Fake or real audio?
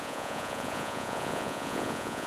fake